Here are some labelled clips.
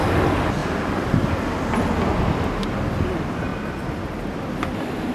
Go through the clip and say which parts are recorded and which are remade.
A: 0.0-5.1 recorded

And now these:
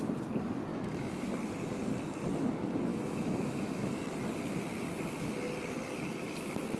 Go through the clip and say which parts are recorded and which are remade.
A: 0.0-0.7 recorded; 0.7-1.3 remade; 1.3-2.9 recorded; 2.9-4.0 remade; 4.0-6.8 recorded

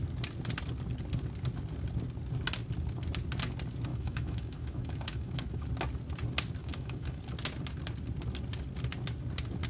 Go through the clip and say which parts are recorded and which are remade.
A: 0.0-3.9 recorded; 3.9-5.6 remade; 5.6-6.6 recorded; 6.6-7.2 remade; 7.2-9.7 recorded